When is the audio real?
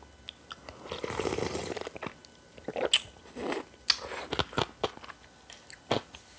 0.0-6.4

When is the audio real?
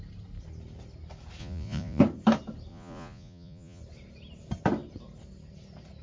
0.0-1.4; 2.0-2.7; 3.8-6.0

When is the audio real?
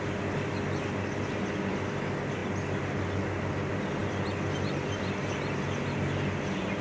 0.0-6.8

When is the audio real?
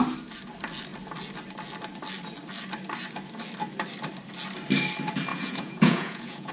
0.0-5.3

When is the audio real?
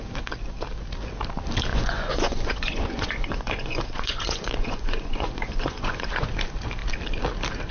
0.0-1.7; 6.3-7.7